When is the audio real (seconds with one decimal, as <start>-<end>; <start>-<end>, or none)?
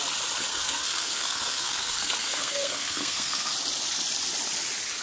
0.0-0.5; 3.5-5.0